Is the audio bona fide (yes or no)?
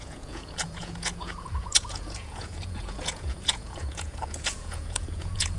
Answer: no